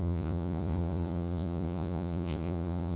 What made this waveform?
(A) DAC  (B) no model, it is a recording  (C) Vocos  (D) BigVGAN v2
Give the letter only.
C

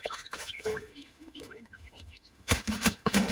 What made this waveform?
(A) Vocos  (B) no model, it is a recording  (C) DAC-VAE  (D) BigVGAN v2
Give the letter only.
C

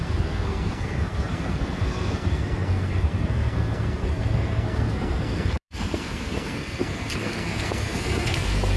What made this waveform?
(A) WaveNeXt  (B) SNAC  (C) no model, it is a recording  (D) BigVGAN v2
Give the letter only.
B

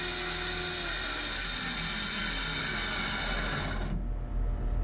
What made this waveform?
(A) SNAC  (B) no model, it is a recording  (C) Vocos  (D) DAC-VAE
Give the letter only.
B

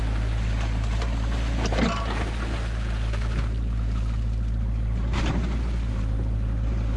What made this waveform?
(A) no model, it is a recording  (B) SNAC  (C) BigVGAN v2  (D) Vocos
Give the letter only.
A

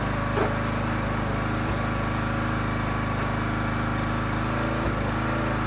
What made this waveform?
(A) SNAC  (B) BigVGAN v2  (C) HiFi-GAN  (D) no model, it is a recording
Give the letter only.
D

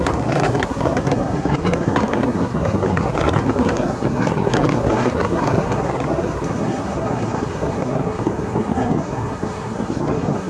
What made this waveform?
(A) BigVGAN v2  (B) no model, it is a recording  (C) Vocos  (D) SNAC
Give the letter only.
D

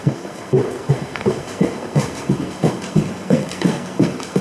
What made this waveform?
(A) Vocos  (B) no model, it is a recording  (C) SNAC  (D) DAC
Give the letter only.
C